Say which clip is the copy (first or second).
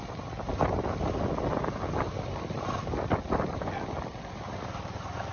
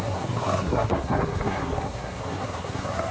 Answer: second